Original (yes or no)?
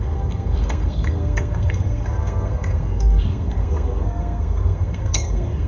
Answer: no